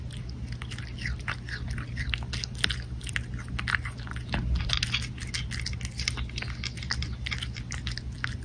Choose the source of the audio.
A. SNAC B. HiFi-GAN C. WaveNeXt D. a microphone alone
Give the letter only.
D